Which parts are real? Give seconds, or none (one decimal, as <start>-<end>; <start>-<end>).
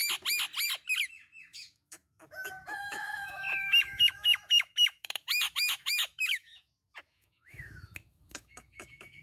0.0-1.1